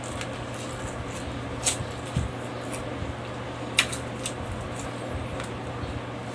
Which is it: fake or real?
real